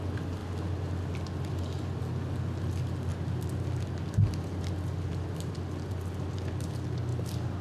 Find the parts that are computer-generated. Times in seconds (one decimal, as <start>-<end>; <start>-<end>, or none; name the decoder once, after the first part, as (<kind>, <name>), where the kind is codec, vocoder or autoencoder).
none